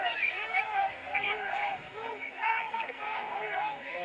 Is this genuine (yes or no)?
no